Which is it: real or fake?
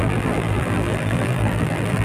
fake